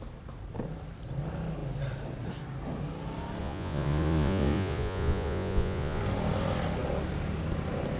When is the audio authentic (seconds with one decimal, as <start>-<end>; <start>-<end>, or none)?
0.0-3.4; 6.0-8.0

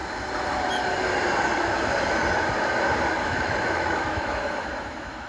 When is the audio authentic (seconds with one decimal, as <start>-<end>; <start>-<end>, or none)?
0.0-3.2

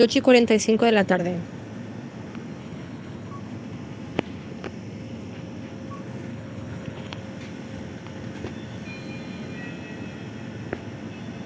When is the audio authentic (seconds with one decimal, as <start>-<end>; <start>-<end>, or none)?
1.2-2.6; 3.3-6.3; 7.2-11.5

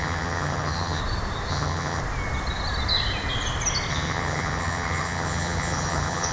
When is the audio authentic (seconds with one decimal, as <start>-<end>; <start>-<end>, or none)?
1.0-1.5; 2.0-3.9